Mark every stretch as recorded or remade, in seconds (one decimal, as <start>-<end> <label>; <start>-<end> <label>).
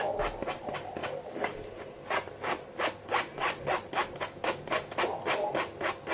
0.0-6.1 recorded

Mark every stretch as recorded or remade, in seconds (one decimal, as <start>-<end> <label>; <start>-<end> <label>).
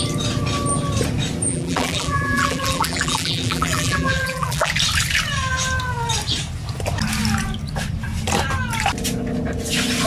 0.0-1.5 recorded; 1.5-4.7 remade; 4.7-10.1 recorded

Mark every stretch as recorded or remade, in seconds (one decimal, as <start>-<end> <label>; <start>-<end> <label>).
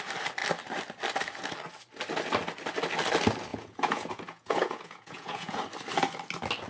0.0-3.5 recorded; 3.5-5.6 remade; 5.6-6.7 recorded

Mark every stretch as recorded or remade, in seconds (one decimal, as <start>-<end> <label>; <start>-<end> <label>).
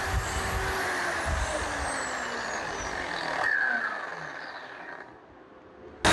0.0-6.1 recorded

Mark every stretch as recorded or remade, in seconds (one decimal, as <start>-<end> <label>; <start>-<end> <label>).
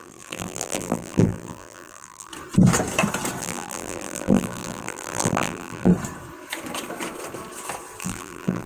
0.0-2.3 remade; 2.3-3.4 recorded; 3.4-5.9 remade; 5.9-8.0 recorded; 8.0-8.7 remade